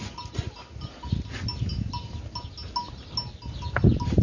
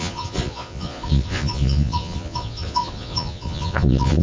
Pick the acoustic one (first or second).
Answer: first